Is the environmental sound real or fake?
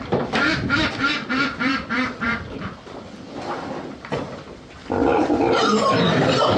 fake